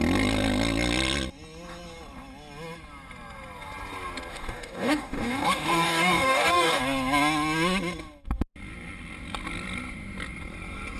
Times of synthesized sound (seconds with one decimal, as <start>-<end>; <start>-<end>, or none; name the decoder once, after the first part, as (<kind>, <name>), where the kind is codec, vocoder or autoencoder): 4.3-6.8 (codec, DAC)